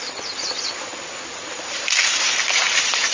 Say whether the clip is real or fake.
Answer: real